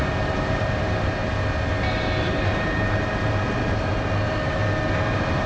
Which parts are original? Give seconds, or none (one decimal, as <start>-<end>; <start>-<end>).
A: 1.2-2.2; 4.6-5.1